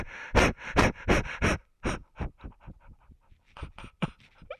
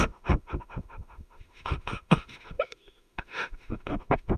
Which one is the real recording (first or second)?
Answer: first